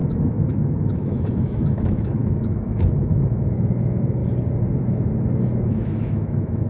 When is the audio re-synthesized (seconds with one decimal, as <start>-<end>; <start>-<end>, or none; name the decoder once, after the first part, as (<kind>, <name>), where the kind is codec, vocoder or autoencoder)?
0.0-4.2 (autoencoder, DAC-VAE); 5.7-6.7

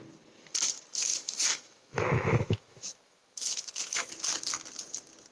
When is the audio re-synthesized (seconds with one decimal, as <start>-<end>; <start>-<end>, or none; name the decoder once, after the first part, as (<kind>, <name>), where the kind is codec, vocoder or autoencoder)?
0.9-4.1 (autoencoder, DAC-VAE)

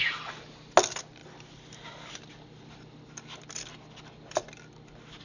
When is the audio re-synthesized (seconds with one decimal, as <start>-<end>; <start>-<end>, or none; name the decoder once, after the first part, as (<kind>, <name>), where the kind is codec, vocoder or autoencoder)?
none

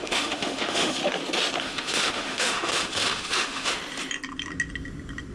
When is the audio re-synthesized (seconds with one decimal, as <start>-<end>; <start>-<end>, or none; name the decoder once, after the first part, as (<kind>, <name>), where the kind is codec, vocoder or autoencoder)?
0.0-1.0 (autoencoder, DAC-VAE); 1.6-3.8

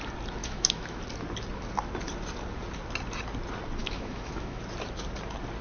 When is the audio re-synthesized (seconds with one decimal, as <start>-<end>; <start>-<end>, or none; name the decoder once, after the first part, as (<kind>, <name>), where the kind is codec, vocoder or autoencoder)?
0.4-1.0 (autoencoder, DAC-VAE); 3.8-4.6

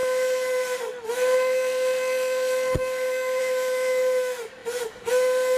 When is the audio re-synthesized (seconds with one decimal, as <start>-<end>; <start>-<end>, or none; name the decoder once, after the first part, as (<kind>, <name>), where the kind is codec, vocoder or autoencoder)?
0.0-5.6 (autoencoder, DAC-VAE)